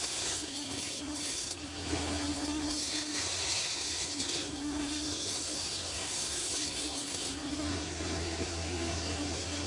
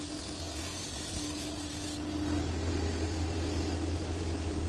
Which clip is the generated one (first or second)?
first